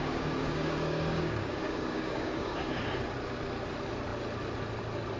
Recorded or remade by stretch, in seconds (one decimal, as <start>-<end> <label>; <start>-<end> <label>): 0.0-2.8 remade; 2.8-5.2 recorded